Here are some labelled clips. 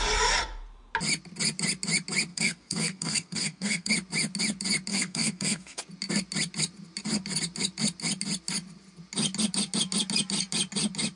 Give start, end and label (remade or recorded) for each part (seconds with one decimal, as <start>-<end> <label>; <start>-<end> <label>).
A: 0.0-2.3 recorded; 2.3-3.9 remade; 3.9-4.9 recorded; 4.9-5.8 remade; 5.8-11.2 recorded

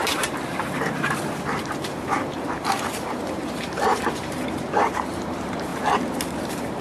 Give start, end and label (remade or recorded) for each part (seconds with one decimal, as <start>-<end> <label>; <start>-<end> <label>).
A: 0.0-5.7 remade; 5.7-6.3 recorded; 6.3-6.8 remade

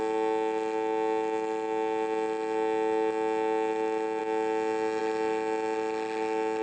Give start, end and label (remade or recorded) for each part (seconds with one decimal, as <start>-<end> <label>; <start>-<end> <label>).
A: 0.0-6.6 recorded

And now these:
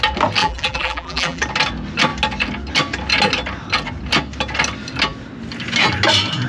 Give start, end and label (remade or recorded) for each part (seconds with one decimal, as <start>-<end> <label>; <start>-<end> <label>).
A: 0.0-0.4 recorded; 0.4-1.4 remade; 1.4-6.5 recorded

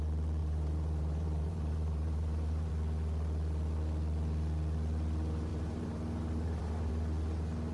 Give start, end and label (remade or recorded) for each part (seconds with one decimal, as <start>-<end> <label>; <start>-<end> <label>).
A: 0.0-0.4 recorded; 0.4-2.7 remade; 2.7-5.5 recorded; 5.5-6.9 remade; 6.9-7.7 recorded

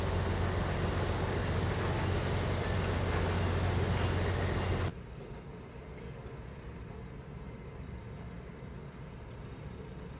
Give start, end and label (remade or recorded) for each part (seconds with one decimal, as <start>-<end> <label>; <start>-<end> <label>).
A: 0.0-10.2 recorded